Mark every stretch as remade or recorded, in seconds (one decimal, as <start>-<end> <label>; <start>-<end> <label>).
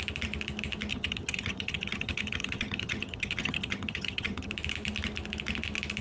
0.0-0.9 recorded; 0.9-4.5 remade; 4.5-6.0 recorded